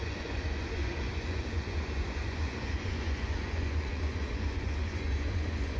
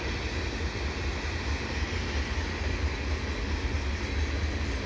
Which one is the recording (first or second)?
second